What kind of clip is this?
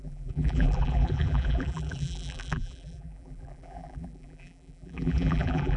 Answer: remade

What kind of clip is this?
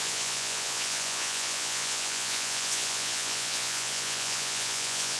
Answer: remade